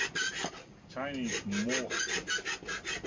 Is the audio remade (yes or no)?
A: no